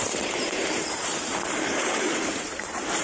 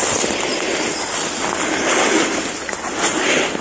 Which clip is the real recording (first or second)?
second